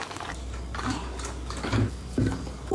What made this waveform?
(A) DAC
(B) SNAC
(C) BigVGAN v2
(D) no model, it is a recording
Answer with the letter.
A